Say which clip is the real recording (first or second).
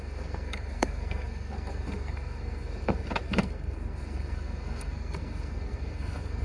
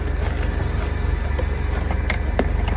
second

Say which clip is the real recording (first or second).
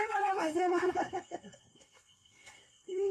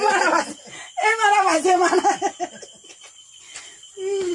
second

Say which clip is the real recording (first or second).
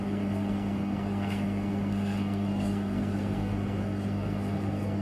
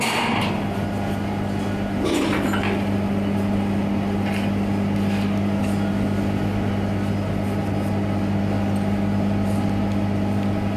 second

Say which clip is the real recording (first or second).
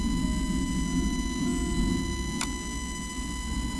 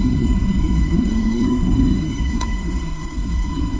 first